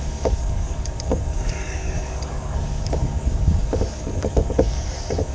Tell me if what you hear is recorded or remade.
remade